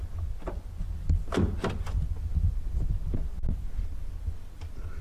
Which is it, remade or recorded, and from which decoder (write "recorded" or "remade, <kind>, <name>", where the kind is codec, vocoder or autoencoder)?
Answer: recorded